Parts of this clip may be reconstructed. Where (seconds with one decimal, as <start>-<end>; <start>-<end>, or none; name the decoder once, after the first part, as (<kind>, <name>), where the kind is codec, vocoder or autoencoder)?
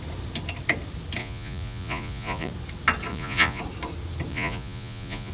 1.2-2.5 (vocoder, Vocos); 3.1-3.6; 4.3-5.3